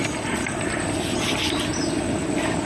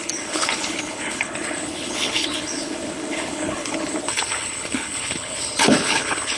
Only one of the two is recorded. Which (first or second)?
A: first